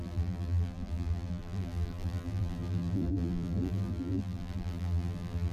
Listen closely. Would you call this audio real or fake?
fake